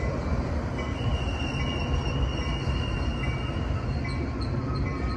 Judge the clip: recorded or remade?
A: recorded